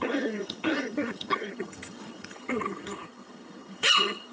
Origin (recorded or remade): remade